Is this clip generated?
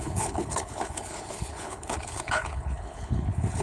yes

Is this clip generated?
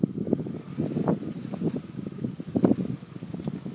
no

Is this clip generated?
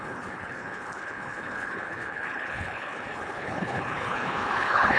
yes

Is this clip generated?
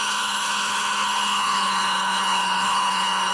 yes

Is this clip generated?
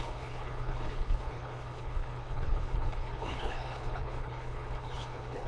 yes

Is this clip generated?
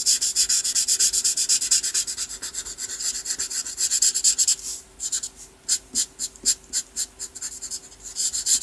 no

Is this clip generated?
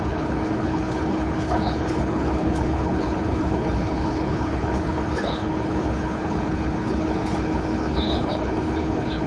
yes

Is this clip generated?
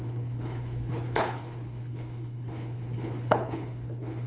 yes